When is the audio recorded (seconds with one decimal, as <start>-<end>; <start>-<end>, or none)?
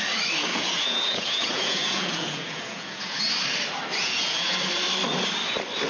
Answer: 0.0-0.5; 3.2-3.9; 4.6-5.9